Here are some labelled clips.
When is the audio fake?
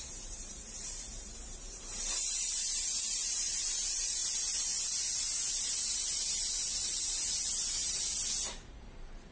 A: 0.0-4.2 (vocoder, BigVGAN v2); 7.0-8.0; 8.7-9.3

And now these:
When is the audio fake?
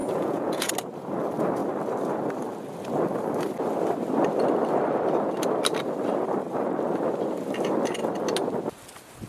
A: 0.0-0.7 (vocoder, Vocos)